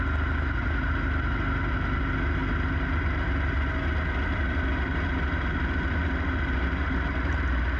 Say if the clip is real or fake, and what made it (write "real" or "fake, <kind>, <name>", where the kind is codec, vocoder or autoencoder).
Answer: real